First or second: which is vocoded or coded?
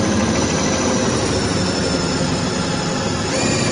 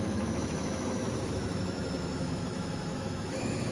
second